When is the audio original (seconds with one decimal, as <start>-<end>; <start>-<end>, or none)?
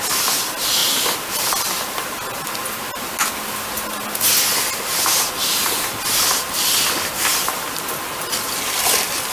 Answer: 0.0-0.8; 2.1-9.3